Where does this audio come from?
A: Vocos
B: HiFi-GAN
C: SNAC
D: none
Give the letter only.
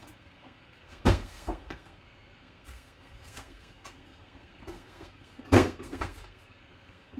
C